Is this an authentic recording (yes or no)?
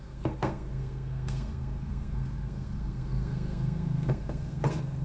no